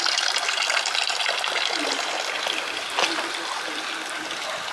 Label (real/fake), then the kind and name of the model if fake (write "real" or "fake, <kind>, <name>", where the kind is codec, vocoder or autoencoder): real